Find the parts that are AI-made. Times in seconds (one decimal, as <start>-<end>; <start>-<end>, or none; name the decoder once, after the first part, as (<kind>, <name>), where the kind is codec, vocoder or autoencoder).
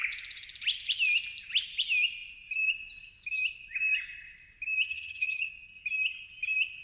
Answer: 4.9-5.5 (vocoder, HiFi-GAN)